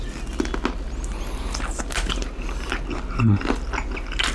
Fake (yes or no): no